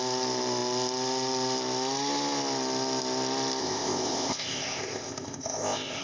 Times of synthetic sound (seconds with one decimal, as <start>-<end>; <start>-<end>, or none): 3.6-6.0